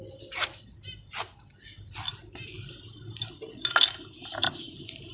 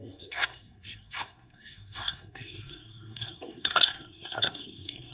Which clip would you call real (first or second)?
first